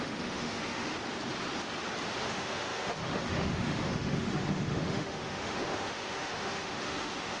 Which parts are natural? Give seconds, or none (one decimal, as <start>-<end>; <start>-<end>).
0.9-2.2